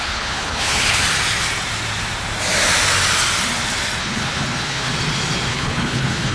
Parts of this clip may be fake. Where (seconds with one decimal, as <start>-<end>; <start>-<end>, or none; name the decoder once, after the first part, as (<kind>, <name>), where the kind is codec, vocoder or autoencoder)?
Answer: 0.0-1.0 (codec, HILCodec); 4.0-4.9; 5.5-6.3